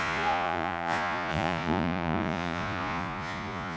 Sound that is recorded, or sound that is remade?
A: remade